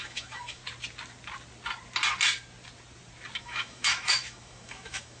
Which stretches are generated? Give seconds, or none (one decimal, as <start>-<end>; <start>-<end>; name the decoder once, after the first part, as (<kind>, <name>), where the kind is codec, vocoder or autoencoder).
0.0-0.6 (autoencoder, DAC-VAE); 3.4-5.2